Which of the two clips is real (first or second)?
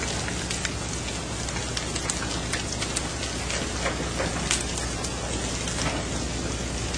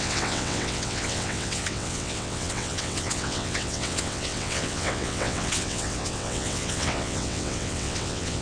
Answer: first